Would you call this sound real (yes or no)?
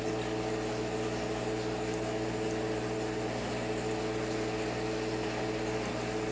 yes